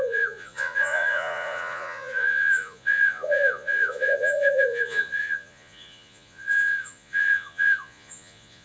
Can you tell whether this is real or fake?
fake